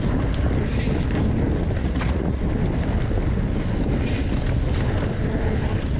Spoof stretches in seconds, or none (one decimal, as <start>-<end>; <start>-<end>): 1.8-2.4